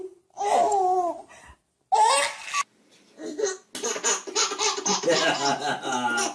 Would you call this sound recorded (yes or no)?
yes